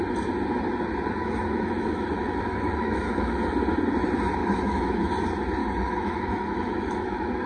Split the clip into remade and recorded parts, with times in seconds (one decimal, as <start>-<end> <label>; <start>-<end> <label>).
0.0-1.2 recorded; 1.2-3.4 remade; 3.4-4.4 recorded; 4.4-5.1 remade; 5.1-5.6 recorded; 5.6-7.5 remade